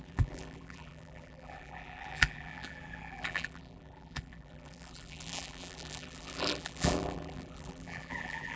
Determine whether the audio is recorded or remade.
remade